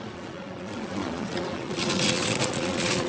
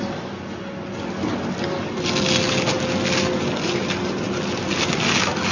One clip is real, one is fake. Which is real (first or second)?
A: second